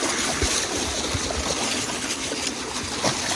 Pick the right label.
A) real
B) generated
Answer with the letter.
A